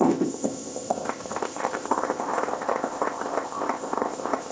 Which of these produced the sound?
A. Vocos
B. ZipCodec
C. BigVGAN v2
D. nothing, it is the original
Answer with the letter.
B